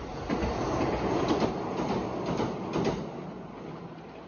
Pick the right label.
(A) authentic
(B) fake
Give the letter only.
A